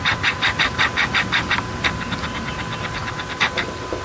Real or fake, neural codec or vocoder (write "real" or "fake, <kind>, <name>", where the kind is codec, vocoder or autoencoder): real